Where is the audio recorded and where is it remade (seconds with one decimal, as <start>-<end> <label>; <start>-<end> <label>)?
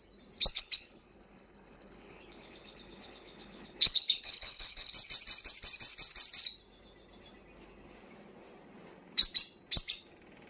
0.0-0.5 recorded; 0.5-4.9 remade; 4.9-10.5 recorded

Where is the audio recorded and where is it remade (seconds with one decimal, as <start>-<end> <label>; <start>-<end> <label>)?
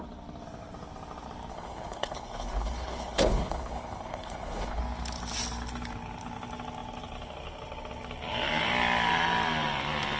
0.0-1.5 recorded; 1.5-4.8 remade; 4.8-10.2 recorded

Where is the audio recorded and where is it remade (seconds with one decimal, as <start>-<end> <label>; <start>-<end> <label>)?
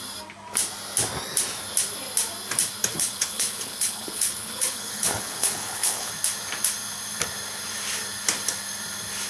0.0-2.9 recorded; 2.9-6.1 remade; 6.1-9.3 recorded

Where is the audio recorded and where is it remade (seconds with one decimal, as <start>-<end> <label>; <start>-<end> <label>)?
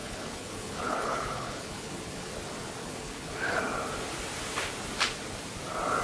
0.0-2.3 remade; 2.3-2.8 recorded; 2.8-3.6 remade; 3.6-6.0 recorded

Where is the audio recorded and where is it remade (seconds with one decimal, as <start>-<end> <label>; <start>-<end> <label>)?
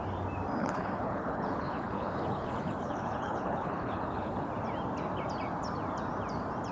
0.0-0.6 recorded; 0.6-4.5 remade; 4.5-6.7 recorded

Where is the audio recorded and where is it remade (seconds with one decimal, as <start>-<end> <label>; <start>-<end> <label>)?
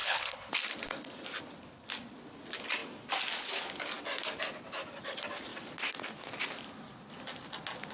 0.0-0.5 remade; 0.5-7.9 recorded